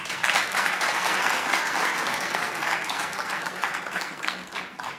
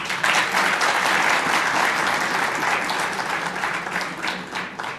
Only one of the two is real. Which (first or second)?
second